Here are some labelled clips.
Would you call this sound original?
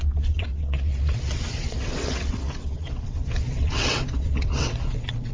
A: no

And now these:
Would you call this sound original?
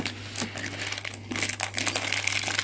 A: yes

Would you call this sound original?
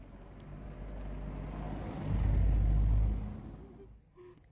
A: yes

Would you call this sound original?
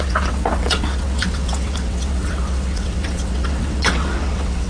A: no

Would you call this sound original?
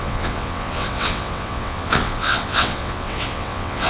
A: no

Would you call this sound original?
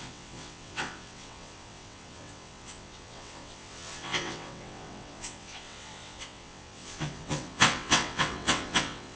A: no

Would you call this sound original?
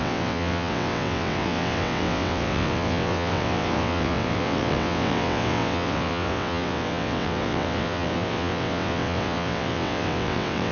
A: no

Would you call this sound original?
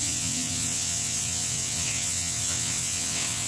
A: no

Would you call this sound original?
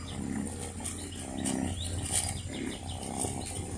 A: yes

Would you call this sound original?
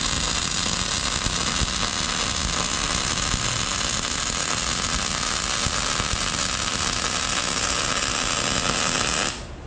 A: yes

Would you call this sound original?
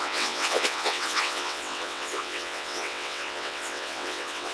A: no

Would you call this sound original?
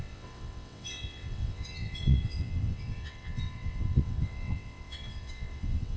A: no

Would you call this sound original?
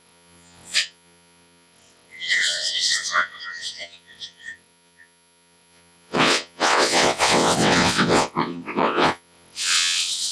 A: no